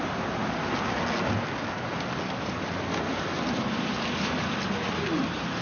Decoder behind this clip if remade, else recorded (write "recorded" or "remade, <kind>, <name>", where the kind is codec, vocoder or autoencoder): recorded